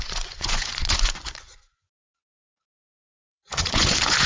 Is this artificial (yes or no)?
yes